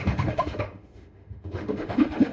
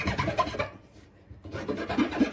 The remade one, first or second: first